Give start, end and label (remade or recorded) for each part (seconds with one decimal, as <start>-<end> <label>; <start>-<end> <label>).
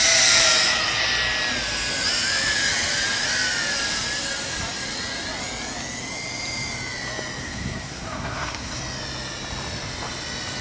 0.0-7.4 recorded; 7.4-8.8 remade; 8.8-10.6 recorded